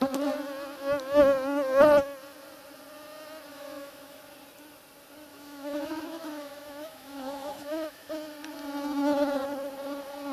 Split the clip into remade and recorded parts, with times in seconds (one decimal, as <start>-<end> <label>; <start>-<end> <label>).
0.0-3.5 recorded; 3.5-4.2 remade; 4.2-5.3 recorded; 5.3-8.1 remade; 8.1-10.3 recorded